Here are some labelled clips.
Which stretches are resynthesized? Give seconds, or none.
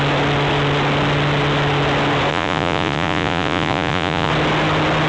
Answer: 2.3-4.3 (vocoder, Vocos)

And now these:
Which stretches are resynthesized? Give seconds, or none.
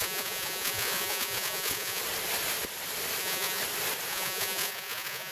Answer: 0.0-2.0 (vocoder, Vocos); 3.2-3.6; 4.1-5.3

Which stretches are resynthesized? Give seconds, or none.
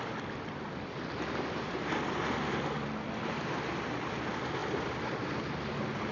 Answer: none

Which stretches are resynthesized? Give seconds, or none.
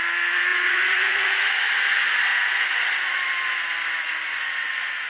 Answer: 0.5-1.5 (vocoder, Vocos); 2.3-3.2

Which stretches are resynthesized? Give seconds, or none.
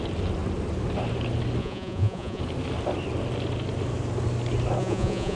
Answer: 1.6-2.4 (vocoder, Vocos); 4.8-5.4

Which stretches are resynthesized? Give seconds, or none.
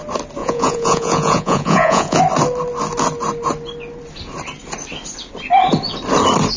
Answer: 0.4-2.2 (vocoder, Vocos)